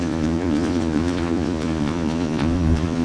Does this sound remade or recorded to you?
remade